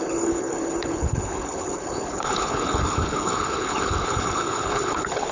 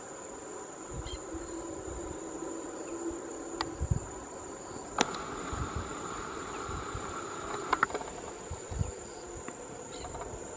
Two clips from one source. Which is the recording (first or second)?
second